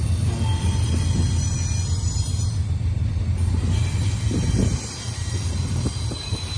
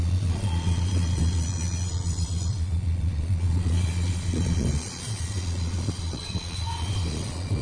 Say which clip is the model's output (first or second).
second